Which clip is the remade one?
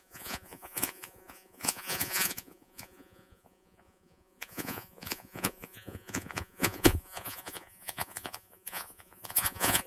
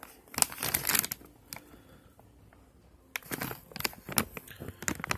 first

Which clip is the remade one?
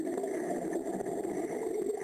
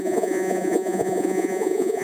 second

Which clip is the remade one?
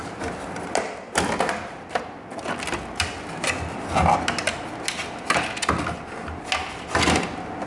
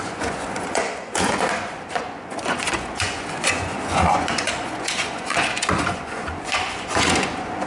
second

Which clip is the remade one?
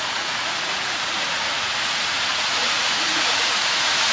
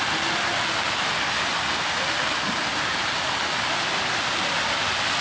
first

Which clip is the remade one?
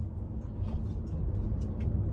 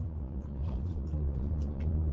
second